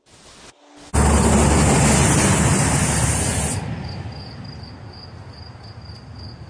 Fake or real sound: real